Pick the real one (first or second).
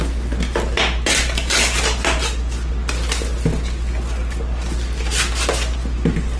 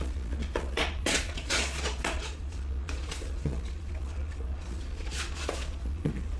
first